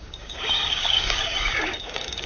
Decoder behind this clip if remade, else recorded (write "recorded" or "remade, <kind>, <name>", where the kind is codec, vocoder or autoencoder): remade, codec, DAC